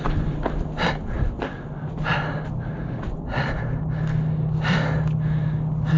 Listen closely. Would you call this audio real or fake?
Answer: real